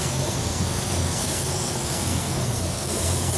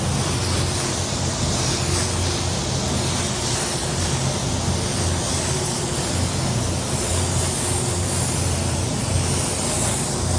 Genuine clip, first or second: second